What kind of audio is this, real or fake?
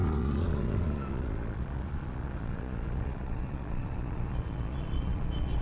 fake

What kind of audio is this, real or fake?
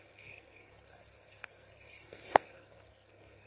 fake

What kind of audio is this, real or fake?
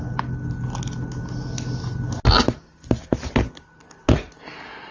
real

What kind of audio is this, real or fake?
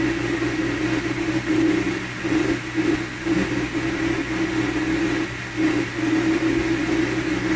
real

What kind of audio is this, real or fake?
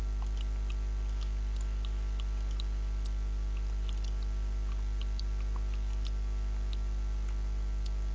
real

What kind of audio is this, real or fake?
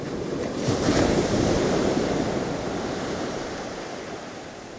fake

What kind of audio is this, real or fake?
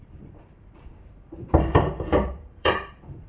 fake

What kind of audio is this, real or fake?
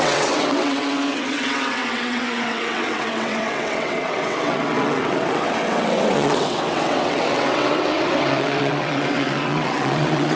fake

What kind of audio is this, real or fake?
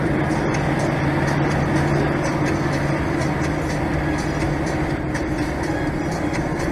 real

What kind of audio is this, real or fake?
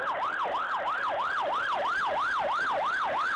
real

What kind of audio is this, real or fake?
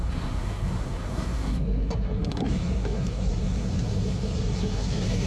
fake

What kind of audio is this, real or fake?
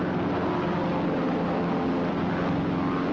real